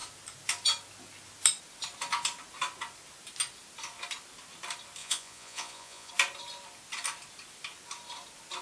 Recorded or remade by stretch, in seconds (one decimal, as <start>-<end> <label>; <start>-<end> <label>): 0.0-5.0 recorded; 5.0-6.1 remade; 6.1-8.6 recorded